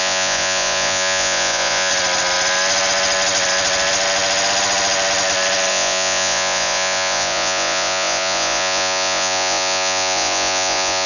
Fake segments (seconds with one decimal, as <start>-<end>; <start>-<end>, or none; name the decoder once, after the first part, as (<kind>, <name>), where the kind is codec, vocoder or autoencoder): 0.0-1.9 (vocoder, Vocos); 5.7-11.1